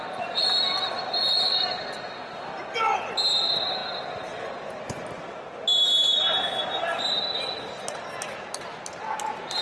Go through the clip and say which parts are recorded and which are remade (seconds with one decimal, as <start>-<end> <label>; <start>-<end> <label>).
0.0-9.6 recorded